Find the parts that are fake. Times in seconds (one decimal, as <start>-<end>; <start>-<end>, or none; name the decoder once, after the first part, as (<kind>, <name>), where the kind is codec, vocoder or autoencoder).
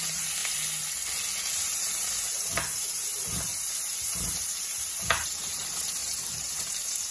0.0-0.4 (vocoder, BigVGAN v2); 1.4-7.1